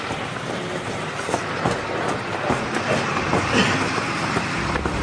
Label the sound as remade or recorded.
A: remade